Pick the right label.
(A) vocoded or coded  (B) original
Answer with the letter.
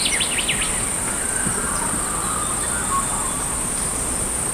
B